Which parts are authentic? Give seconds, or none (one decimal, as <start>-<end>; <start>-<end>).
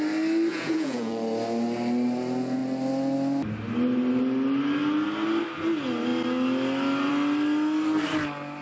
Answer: 0.0-0.5; 1.1-8.6